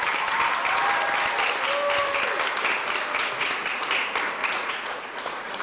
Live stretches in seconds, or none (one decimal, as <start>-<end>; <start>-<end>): 0.0-3.2; 3.8-4.4